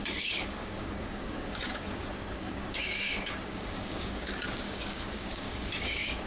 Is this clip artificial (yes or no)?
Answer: yes